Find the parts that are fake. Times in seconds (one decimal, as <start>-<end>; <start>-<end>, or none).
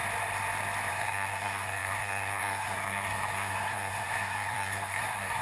0.9-5.4